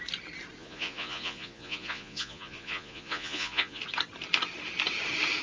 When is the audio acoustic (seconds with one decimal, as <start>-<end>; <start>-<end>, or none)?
0.0-0.6; 3.8-5.4